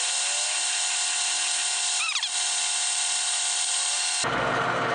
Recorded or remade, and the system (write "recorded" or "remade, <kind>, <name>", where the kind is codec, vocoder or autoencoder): recorded